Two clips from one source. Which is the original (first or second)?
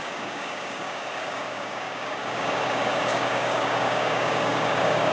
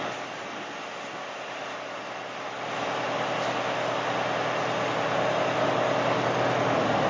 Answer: second